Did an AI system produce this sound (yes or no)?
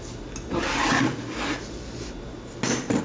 no